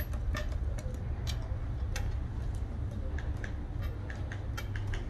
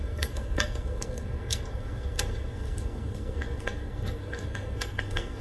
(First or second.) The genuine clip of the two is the first